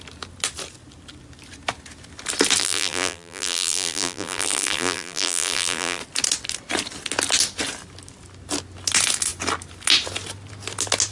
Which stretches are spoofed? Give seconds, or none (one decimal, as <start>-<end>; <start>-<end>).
2.6-6.0

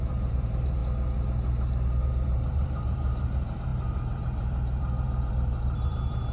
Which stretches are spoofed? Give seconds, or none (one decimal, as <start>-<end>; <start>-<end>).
0.0-0.8; 2.0-6.3

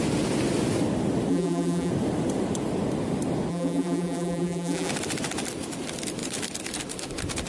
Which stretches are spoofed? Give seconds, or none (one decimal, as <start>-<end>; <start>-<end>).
1.3-1.9; 3.5-4.9

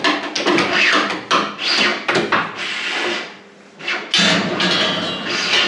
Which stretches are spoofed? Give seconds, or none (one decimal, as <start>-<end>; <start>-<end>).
none

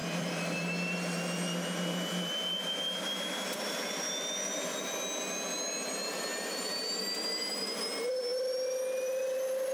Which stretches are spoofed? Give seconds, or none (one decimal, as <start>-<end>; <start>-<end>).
0.0-4.8; 6.3-7.0

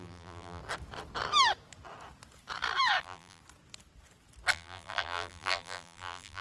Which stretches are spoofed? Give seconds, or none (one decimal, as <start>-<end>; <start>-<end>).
0.0-0.6; 3.0-3.4; 4.5-6.4